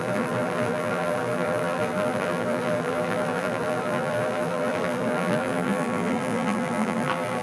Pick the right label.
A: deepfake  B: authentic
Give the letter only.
A